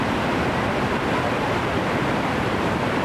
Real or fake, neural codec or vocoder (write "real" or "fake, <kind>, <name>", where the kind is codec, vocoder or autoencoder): real